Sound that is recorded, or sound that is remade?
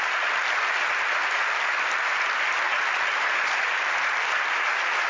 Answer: remade